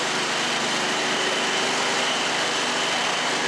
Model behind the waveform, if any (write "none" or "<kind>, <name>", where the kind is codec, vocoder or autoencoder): none